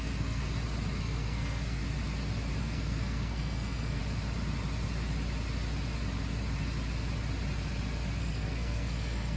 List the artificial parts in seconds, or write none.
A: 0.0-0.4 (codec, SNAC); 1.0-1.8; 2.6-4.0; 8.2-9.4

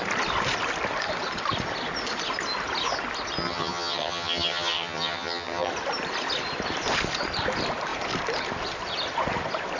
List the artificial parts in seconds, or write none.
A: 3.4-5.7 (vocoder, HiFi-GAN)

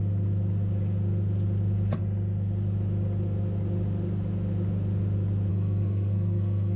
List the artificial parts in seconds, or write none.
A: 5.5-6.8 (codec, SNAC)

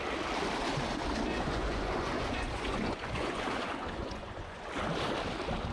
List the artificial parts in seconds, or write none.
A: 1.3-4.7 (vocoder, Vocos)

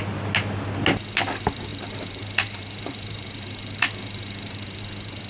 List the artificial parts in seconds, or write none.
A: 1.7-4.8 (vocoder, BigVGAN v2)

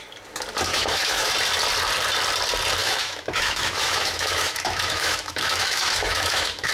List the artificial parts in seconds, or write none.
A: 0.7-1.3 (autoencoder, DAC-VAE); 2.8-6.7

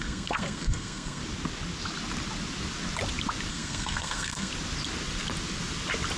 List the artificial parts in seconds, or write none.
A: 0.0-1.2 (codec, SNAC); 3.5-4.5